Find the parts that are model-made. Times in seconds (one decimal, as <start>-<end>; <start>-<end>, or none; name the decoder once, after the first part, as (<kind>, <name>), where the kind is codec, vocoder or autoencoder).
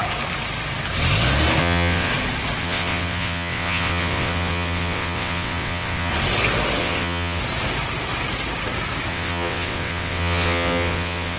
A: 1.6-2.1 (vocoder, WaveNeXt); 2.6-6.1; 6.8-7.4; 9.1-11.4